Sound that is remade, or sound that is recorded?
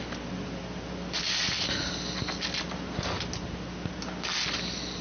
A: recorded